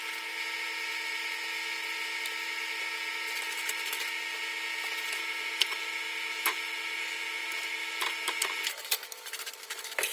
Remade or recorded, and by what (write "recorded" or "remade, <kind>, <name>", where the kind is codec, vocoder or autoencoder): recorded